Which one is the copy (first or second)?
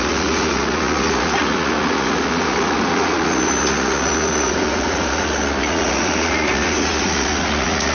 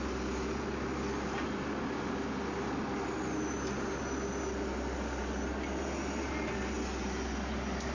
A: first